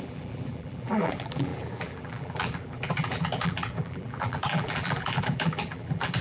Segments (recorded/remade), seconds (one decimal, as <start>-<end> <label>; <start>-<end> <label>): 0.0-6.2 remade